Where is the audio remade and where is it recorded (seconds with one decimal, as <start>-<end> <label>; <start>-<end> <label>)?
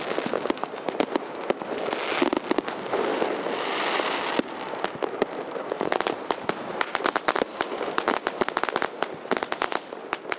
0.0-10.4 recorded